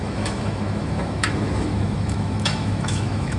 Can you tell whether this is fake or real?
fake